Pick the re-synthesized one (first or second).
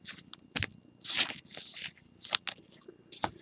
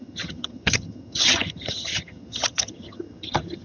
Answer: second